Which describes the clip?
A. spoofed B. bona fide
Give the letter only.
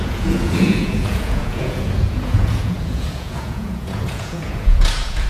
A